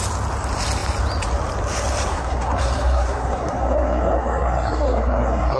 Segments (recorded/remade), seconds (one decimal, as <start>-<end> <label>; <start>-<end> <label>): 0.0-2.1 recorded; 2.1-5.6 remade